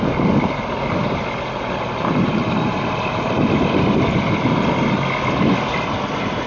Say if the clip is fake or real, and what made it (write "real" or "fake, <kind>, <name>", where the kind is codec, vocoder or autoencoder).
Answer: real